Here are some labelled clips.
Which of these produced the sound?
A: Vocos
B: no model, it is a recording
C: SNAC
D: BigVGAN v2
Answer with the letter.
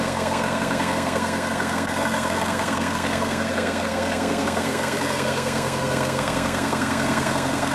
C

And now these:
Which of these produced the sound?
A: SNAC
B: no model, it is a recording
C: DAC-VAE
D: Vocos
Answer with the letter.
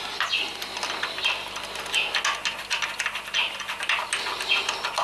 B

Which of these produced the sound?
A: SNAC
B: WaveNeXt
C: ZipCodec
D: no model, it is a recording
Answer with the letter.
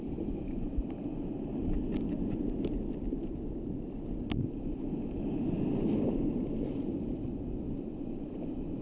D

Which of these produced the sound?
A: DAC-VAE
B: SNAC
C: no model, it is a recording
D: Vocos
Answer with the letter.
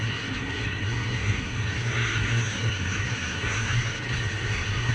B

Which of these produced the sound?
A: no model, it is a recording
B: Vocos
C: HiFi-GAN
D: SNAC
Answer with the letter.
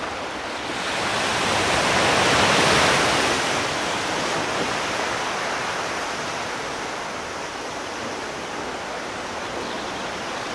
A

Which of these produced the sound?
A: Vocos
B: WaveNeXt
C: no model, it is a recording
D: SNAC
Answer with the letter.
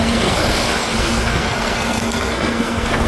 D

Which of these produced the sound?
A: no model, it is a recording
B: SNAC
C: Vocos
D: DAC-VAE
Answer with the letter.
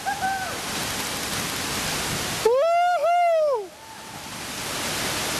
A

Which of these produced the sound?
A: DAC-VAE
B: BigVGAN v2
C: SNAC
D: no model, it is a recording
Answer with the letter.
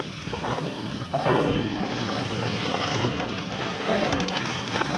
C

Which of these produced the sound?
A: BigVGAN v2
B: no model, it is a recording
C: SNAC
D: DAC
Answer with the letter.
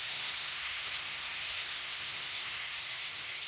C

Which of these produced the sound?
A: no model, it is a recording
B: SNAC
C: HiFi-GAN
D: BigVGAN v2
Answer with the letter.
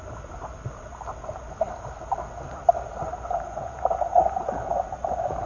A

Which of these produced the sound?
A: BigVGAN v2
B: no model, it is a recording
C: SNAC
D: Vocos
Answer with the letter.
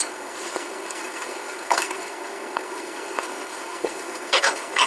C